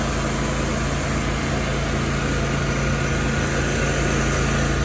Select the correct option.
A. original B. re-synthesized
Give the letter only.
A